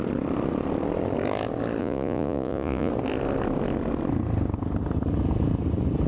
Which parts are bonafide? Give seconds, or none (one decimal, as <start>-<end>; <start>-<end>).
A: 0.0-1.8; 2.9-6.1